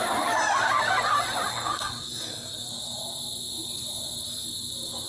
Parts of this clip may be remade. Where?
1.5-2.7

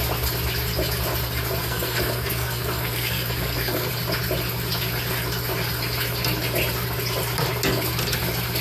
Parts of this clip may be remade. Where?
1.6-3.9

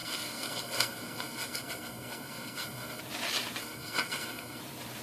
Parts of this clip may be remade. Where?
0.0-3.0; 3.6-4.6

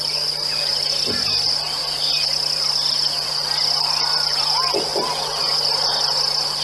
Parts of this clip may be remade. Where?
none

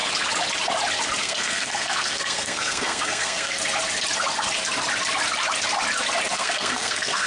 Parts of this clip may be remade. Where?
1.2-3.6; 6.3-7.3

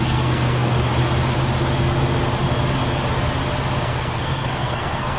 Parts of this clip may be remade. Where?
0.0-0.9; 3.8-5.2

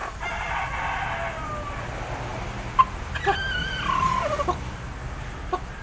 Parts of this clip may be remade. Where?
none

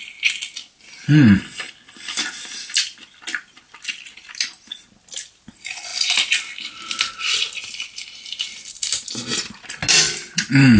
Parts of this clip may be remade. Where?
none